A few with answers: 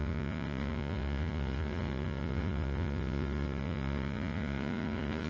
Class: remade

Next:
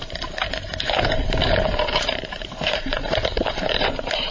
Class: remade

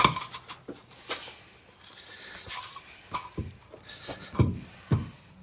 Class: recorded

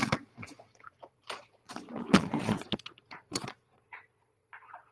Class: remade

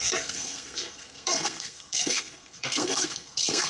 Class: remade